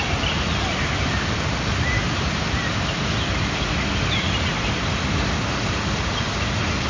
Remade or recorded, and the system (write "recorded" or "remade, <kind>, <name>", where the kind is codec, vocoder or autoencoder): recorded